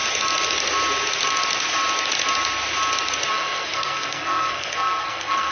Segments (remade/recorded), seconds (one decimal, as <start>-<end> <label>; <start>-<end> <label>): 0.0-3.3 recorded; 3.3-5.5 remade